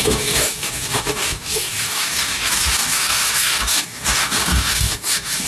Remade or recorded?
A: remade